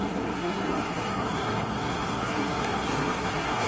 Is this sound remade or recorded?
remade